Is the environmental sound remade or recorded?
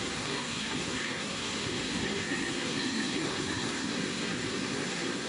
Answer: remade